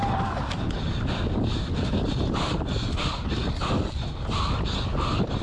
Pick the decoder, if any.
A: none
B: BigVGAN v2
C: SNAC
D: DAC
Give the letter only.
A